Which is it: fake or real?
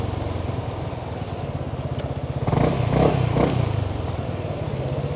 real